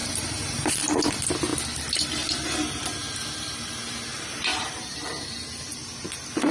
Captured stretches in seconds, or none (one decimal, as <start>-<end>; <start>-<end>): 0.7-4.5; 5.3-6.5